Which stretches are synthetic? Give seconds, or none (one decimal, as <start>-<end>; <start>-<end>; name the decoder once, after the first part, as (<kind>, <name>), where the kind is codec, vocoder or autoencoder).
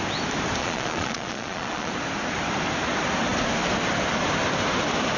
0.6-1.9 (vocoder, Vocos)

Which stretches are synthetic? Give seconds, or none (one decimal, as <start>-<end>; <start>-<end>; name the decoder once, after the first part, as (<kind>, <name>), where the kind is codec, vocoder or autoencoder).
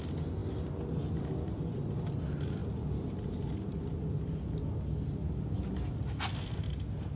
none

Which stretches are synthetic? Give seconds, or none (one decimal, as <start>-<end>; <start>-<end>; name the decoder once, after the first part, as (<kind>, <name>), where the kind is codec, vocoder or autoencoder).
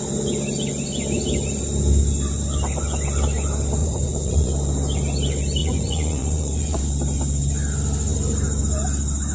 3.8-4.5 (vocoder, Vocos); 5.6-6.8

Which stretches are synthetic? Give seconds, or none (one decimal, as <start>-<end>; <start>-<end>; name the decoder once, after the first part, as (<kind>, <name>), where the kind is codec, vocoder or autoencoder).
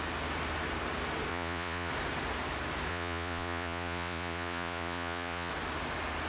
1.3-1.9 (vocoder, Vocos); 2.9-5.5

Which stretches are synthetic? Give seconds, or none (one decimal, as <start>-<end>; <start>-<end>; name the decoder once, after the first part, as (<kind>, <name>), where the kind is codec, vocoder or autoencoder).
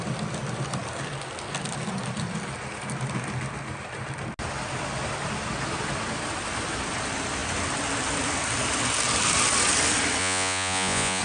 10.2-11.2 (vocoder, Vocos)